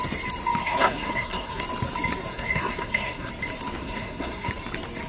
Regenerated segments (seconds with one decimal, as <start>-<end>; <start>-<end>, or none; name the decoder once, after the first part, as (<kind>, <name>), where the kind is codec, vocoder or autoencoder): 0.6-1.6 (codec, SNAC); 2.3-3.3; 3.8-4.5